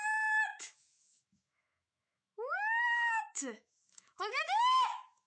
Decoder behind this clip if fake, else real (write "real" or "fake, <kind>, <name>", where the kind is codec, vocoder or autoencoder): fake, autoencoder, DAC-VAE